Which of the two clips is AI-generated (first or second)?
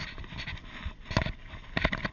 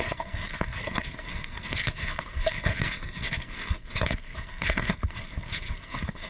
second